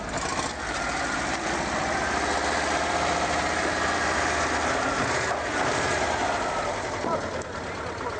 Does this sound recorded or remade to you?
remade